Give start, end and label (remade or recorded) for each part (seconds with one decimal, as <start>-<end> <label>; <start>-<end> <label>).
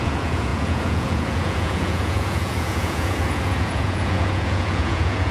0.0-5.3 remade